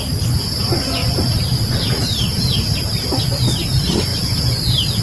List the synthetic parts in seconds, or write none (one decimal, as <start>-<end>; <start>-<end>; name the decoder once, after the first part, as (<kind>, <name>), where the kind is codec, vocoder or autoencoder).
1.0-3.4 (vocoder, BigVGAN v2)